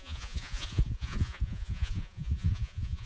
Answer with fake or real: fake